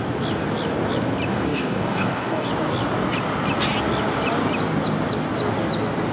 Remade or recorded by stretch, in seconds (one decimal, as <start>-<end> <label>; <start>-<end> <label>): 0.0-1.3 recorded; 1.3-2.5 remade; 2.5-6.1 recorded